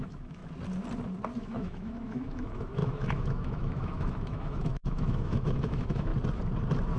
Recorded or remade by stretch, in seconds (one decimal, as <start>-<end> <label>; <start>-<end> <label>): 0.0-0.4 remade; 0.4-1.4 recorded; 1.4-6.1 remade; 6.1-7.0 recorded